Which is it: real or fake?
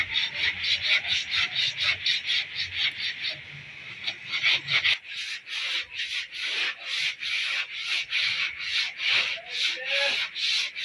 real